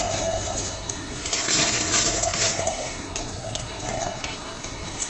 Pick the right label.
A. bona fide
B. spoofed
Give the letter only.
B